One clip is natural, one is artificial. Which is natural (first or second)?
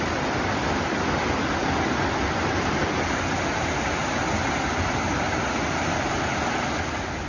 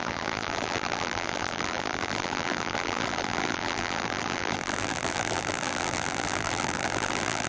first